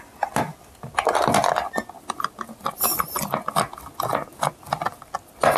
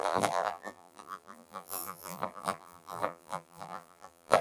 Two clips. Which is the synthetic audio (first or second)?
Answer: second